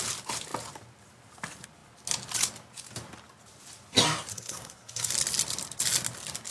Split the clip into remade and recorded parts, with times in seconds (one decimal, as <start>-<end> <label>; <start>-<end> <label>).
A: 0.0-4.3 recorded; 4.3-5.1 remade; 5.1-6.5 recorded